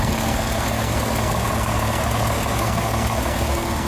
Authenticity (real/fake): fake